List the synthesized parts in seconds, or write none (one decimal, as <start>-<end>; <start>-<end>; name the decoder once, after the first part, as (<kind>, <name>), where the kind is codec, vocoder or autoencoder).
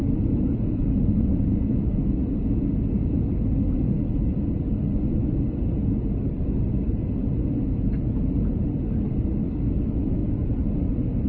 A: 0.0-3.2 (vocoder, Vocos); 6.9-8.7; 10.2-10.8